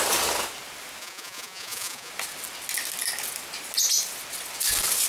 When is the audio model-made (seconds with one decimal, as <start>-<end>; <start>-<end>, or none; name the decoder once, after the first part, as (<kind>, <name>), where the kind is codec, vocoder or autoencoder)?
1.0-2.1 (vocoder, Vocos)